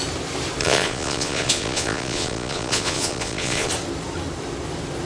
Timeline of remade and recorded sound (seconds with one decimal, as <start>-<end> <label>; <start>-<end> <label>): 0.0-0.6 recorded; 0.6-3.7 remade; 3.7-5.1 recorded